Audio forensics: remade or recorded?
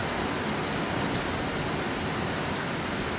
recorded